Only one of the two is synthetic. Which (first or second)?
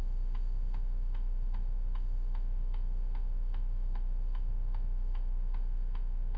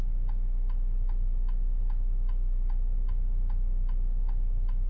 first